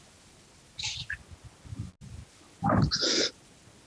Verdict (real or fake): real